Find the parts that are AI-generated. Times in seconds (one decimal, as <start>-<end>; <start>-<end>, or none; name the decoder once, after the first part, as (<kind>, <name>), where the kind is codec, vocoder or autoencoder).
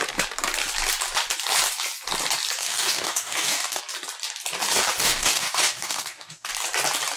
2.6-3.8 (codec, DAC); 5.0-6.5